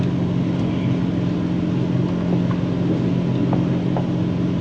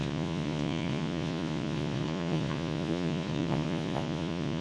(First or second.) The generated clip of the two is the second